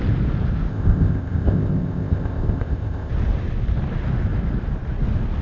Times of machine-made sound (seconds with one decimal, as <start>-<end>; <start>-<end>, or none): 0.7-3.1